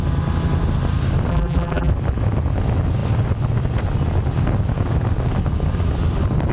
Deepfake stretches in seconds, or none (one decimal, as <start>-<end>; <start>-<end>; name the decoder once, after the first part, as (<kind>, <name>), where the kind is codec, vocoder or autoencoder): 1.3-1.9 (vocoder, BigVGAN v2)